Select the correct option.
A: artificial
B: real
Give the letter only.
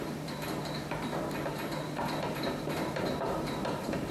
A